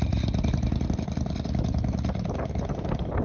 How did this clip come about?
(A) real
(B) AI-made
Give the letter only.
A